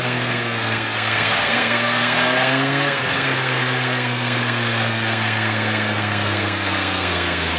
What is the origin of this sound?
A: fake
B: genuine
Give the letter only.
A